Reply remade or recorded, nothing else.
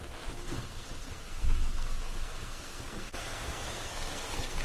remade